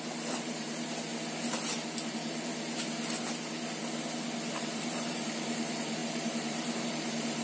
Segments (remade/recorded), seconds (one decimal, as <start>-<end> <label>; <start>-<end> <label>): 0.0-1.1 remade; 1.1-2.1 recorded; 2.1-2.5 remade; 2.5-4.6 recorded; 4.6-7.4 remade